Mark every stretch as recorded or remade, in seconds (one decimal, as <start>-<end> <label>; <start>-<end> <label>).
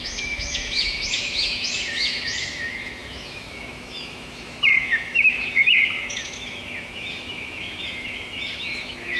0.0-9.2 remade